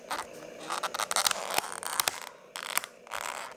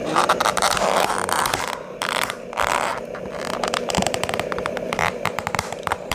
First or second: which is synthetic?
second